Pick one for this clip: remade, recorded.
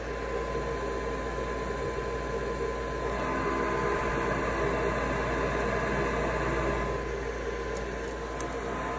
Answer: recorded